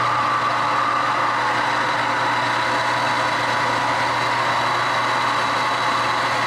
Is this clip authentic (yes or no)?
yes